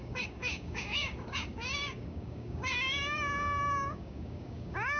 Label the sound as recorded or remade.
remade